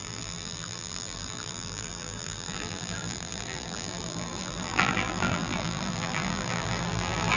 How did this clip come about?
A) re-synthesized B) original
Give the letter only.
A